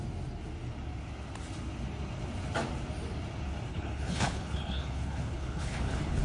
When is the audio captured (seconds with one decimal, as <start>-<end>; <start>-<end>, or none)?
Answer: 0.0-3.7